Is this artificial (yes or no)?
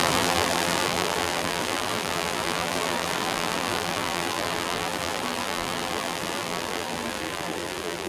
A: yes